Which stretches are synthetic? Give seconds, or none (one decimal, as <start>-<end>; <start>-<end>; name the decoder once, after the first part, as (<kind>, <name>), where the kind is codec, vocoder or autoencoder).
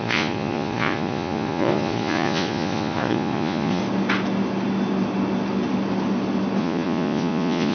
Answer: 0.0-3.8 (vocoder, Vocos); 6.6-7.7